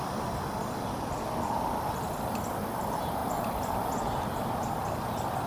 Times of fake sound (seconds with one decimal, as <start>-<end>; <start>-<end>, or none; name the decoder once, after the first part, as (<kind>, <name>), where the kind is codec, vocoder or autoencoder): none